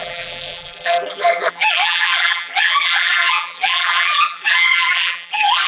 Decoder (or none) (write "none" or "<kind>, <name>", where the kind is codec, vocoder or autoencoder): vocoder, BigVGAN v2